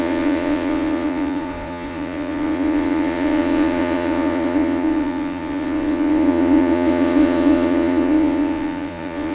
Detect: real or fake fake